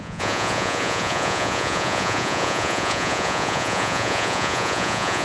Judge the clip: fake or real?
fake